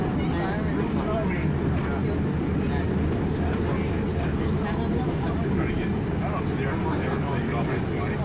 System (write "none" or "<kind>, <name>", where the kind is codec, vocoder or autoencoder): none